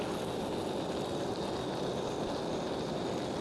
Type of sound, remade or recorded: recorded